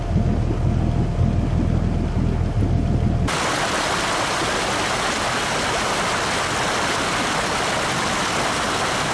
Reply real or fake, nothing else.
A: real